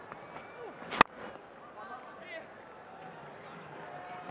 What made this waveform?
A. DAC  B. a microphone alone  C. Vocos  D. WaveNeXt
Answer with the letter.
B